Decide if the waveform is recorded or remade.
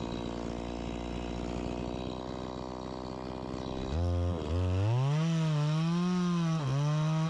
recorded